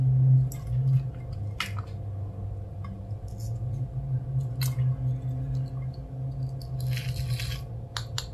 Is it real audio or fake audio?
real